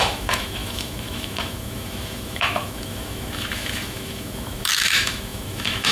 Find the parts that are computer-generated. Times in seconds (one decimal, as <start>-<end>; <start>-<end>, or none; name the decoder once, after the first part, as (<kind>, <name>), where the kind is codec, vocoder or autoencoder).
0.0-5.9 (autoencoder, DAC-VAE)